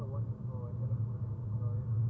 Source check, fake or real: real